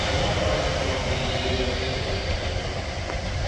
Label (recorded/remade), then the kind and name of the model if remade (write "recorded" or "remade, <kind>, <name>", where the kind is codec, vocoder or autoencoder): recorded